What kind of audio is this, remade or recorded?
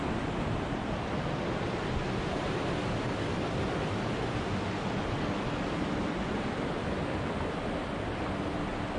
recorded